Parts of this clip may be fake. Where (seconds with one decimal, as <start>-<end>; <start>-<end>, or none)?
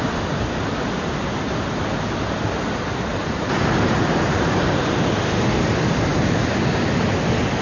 3.1-4.9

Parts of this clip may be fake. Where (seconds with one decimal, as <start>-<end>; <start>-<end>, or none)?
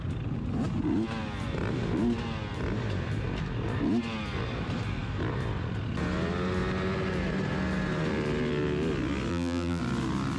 9.3-9.8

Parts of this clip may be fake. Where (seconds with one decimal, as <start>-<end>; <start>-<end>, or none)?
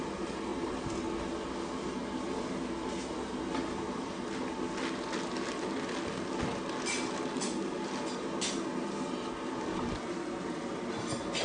none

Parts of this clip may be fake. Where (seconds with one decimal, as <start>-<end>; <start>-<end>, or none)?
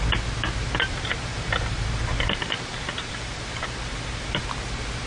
1.3-4.4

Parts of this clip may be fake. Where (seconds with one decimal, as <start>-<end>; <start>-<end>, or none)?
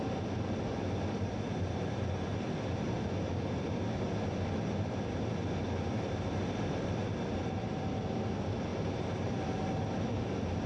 7.4-7.9; 8.7-9.3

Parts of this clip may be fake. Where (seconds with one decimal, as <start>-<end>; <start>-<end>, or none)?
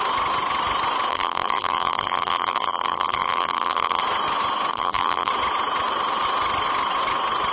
1.1-4.0; 4.7-5.3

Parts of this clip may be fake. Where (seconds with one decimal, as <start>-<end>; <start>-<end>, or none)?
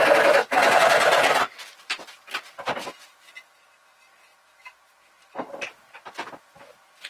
0.6-2.5; 4.3-6.4